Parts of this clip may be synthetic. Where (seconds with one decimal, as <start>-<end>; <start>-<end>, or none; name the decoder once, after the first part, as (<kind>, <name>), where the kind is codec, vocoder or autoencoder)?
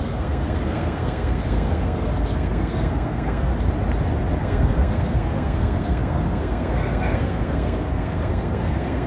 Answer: 0.0-3.5 (codec, SNAC); 4.4-9.1